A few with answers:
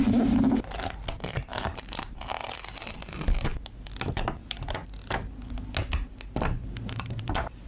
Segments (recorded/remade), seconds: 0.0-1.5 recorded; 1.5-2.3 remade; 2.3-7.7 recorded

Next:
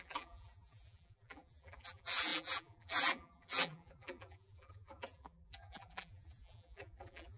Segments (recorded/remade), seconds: 0.0-7.4 remade

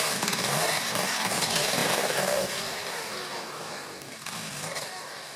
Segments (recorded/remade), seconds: 0.0-5.4 remade

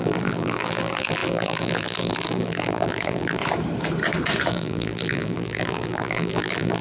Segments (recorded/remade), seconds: 0.0-3.4 remade; 3.4-4.5 recorded; 4.5-6.8 remade

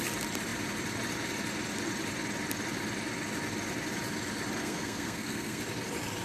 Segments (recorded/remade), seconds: 0.0-4.6 recorded; 4.6-5.6 remade; 5.6-6.2 recorded

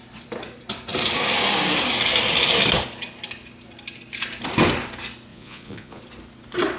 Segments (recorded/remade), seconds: 0.0-5.3 recorded; 5.3-6.0 remade; 6.0-6.8 recorded

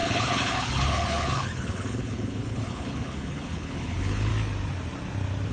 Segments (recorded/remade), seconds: 0.0-4.3 remade; 4.3-5.5 recorded

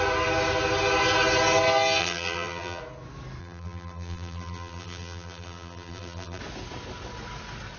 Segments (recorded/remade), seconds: 0.0-2.0 recorded; 2.0-2.8 remade; 2.8-3.4 recorded; 3.4-6.4 remade; 6.4-7.8 recorded